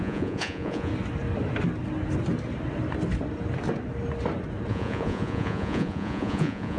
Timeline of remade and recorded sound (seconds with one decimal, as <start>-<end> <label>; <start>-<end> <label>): 0.0-0.9 remade; 0.9-4.7 recorded; 4.7-6.8 remade